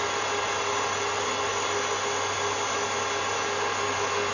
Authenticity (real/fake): real